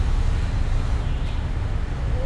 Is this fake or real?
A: real